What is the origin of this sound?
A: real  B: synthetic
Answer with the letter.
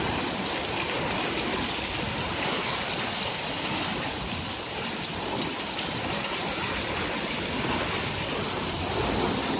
B